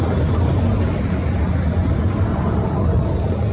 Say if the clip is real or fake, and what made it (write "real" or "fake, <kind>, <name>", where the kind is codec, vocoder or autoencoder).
real